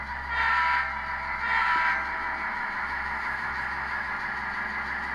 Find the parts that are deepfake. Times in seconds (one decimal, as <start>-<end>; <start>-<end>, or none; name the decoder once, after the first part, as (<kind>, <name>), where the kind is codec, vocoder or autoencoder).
2.5-4.1 (autoencoder, DAC-VAE)